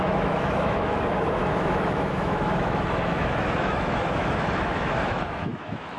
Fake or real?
fake